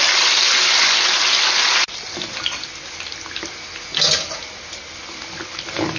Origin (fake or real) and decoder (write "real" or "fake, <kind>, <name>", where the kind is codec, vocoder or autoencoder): real